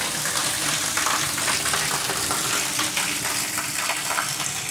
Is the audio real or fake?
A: real